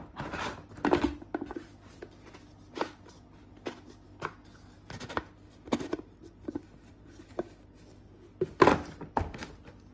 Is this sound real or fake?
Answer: real